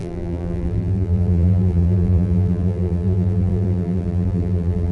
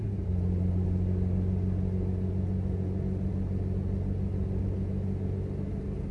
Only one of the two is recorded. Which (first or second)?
second